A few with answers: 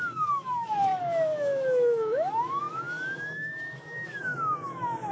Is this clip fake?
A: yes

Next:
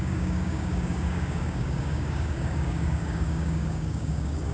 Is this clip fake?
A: yes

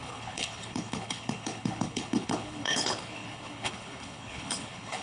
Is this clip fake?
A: yes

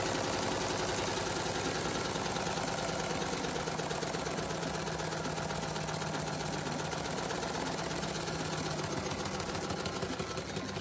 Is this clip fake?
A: no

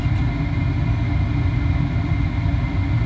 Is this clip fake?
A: no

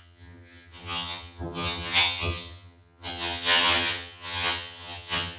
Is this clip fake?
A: yes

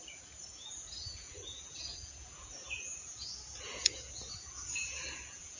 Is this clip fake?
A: yes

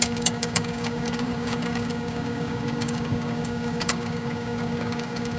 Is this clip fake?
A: yes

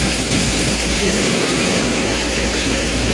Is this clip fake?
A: yes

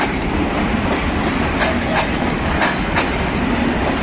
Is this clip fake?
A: no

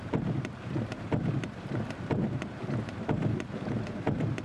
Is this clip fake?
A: yes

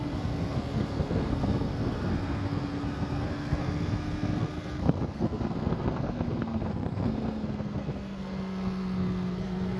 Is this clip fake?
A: yes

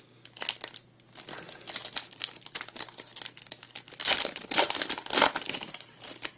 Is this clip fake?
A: no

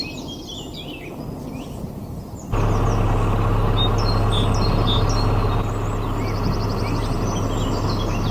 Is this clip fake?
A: no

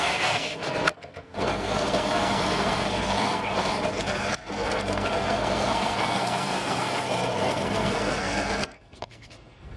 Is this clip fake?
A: yes